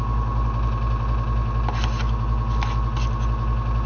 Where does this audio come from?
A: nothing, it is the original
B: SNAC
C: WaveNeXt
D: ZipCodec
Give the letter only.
A